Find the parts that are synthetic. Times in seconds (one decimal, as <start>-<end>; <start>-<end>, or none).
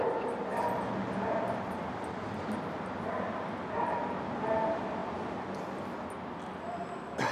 none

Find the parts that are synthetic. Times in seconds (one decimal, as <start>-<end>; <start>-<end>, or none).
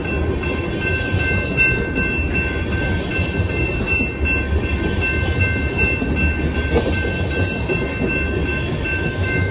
8.5-9.5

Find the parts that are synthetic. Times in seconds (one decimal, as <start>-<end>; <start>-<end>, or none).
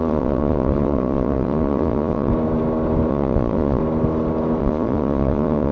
0.0-2.3; 3.1-3.8; 4.6-5.7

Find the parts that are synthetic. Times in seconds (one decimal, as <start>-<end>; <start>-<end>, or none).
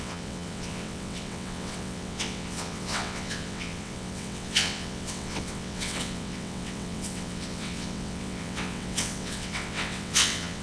0.0-10.6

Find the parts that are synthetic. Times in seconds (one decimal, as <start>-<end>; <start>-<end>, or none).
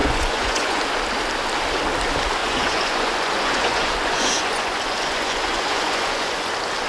0.0-0.8; 2.4-6.5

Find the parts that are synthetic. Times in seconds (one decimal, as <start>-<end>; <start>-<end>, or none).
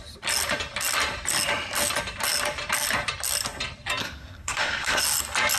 4.0-5.0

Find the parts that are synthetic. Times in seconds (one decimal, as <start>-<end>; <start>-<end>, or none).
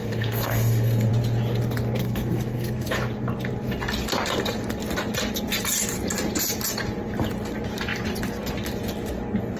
0.0-1.1; 2.0-3.1